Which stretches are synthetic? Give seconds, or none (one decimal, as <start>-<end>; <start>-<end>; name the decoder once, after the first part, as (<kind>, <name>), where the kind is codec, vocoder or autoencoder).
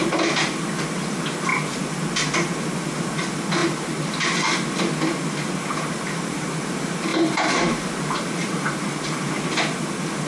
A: 7.1-9.4 (vocoder, BigVGAN v2)